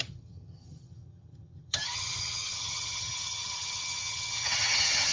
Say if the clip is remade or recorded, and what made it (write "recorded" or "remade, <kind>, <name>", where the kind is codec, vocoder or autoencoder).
remade, vocoder, HiFi-GAN